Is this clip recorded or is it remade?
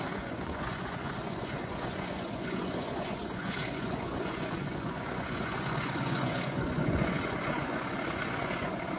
remade